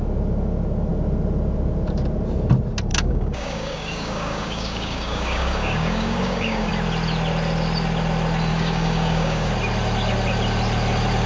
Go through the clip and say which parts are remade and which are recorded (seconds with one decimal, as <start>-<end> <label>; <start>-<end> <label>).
0.0-2.9 recorded; 2.9-6.7 remade; 6.7-8.5 recorded; 8.5-9.5 remade; 9.5-11.3 recorded